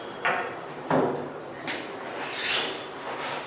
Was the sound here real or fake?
real